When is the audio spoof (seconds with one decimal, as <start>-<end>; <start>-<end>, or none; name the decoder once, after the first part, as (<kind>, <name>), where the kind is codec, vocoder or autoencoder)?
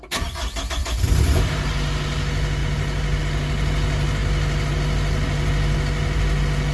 none